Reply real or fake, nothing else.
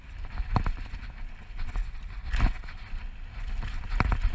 real